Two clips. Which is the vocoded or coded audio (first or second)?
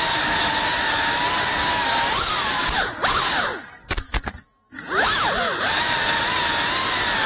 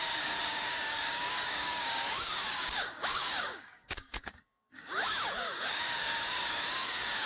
second